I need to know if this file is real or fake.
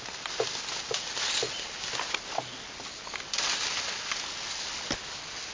real